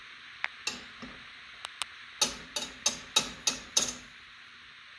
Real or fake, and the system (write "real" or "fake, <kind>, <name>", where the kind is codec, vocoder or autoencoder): real